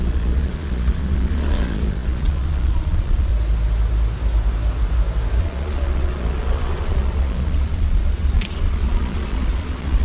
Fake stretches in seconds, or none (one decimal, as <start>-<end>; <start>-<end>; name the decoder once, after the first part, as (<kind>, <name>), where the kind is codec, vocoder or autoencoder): 0.0-3.3 (vocoder, Vocos); 5.4-10.0